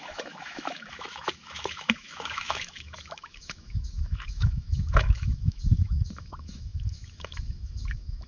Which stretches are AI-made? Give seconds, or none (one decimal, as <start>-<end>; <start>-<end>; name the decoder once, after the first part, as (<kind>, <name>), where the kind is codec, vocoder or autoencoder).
0.0-8.3 (autoencoder, DAC-VAE)